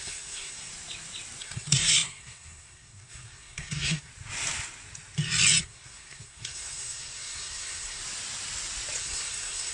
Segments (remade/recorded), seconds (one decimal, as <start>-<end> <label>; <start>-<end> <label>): 0.0-0.7 remade; 0.7-1.4 recorded; 1.4-4.1 remade; 4.1-5.6 recorded; 5.6-8.0 remade; 8.0-9.0 recorded; 9.0-9.7 remade